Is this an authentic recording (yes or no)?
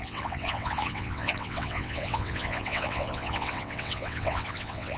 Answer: no